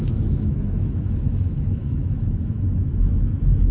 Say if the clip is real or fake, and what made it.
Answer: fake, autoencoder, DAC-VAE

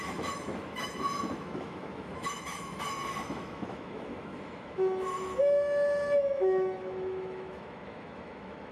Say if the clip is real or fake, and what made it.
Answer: fake, autoencoder, DAC-VAE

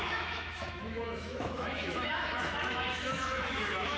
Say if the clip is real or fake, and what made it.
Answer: fake, autoencoder, DAC-VAE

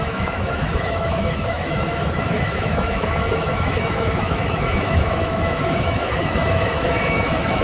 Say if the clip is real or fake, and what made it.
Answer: fake, autoencoder, DAC-VAE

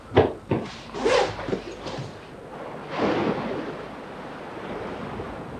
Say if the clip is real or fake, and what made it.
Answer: real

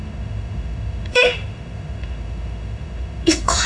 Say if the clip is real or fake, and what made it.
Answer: fake, autoencoder, DAC-VAE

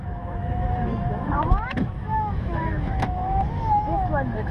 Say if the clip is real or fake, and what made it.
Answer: fake, autoencoder, DAC-VAE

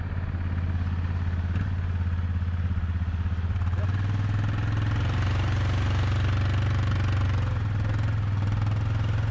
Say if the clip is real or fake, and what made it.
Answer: real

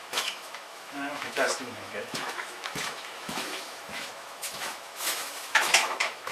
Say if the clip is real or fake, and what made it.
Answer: fake, autoencoder, DAC-VAE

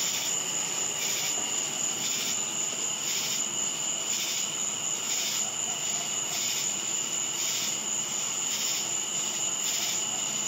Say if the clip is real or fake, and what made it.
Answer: real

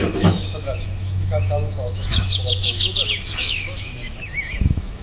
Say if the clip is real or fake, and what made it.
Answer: fake, autoencoder, DAC-VAE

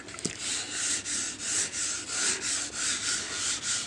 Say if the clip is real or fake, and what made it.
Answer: real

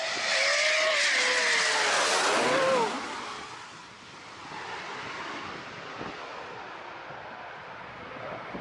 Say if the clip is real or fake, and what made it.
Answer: real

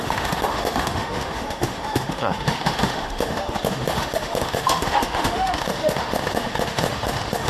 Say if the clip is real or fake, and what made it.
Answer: fake, autoencoder, DAC-VAE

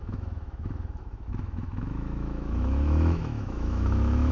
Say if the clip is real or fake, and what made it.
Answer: fake, autoencoder, DAC-VAE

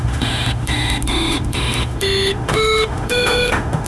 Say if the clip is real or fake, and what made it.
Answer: fake, autoencoder, DAC-VAE